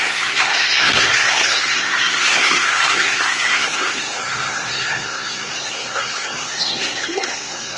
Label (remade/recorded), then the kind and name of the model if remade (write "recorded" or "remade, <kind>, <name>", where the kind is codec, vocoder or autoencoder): remade, codec, SNAC